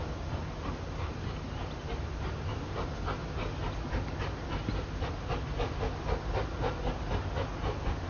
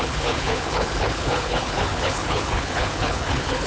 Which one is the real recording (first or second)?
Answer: first